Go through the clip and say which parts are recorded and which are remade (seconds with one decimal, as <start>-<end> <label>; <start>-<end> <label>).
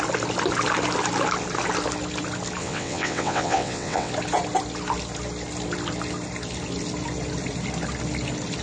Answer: 0.0-2.6 recorded; 2.6-4.1 remade; 4.1-8.6 recorded